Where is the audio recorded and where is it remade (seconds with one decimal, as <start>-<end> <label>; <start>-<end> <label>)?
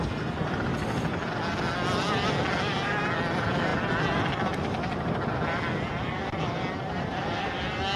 0.0-8.0 recorded